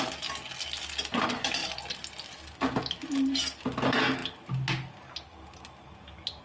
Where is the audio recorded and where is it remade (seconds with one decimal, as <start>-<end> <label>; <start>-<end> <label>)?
0.0-6.4 recorded